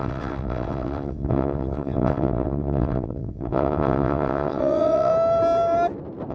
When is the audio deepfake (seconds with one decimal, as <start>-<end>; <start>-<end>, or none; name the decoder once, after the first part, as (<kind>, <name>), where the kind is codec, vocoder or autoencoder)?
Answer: 0.0-5.1 (vocoder, WaveNeXt)